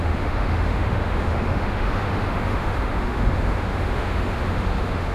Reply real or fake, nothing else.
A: fake